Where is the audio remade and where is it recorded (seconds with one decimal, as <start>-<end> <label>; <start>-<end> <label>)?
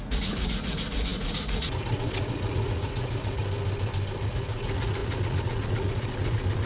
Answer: 0.0-3.4 remade; 3.4-4.2 recorded; 4.2-6.7 remade